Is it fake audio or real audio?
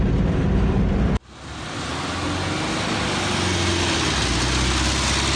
real